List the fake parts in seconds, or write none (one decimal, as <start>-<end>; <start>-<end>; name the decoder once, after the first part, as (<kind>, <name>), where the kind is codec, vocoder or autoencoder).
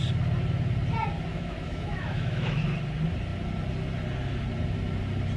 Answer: 1.3-2.6 (autoencoder, DAC-VAE)